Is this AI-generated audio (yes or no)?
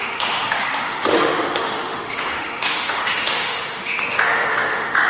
yes